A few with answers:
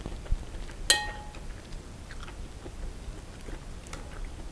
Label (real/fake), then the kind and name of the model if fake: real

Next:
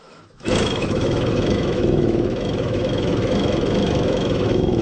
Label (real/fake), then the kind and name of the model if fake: fake, autoencoder, DAC-VAE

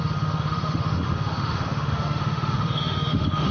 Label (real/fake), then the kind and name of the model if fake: fake, autoencoder, DAC-VAE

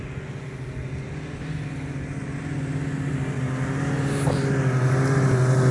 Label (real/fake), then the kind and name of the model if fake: real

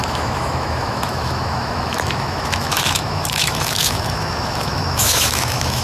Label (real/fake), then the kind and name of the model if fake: fake, autoencoder, DAC-VAE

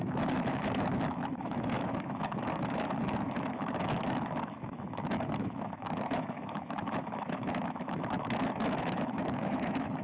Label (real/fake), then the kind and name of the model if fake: fake, autoencoder, DAC-VAE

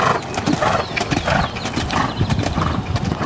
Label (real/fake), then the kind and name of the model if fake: real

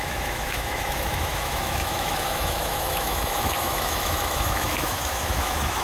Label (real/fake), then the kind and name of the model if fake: fake, autoencoder, DAC-VAE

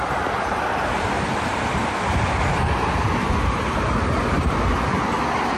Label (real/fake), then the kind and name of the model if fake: real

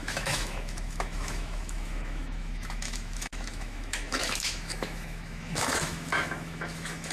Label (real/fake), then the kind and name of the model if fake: fake, autoencoder, DAC-VAE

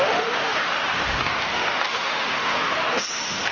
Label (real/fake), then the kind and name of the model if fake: fake, autoencoder, DAC-VAE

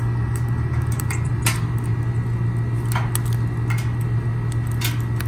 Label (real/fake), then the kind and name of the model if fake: real